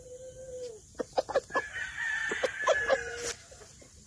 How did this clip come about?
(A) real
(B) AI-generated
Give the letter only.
A